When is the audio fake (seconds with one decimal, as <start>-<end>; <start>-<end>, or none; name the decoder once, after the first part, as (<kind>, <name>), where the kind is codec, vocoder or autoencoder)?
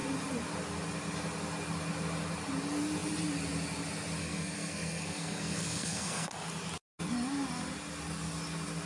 4.2-6.3 (codec, SNAC)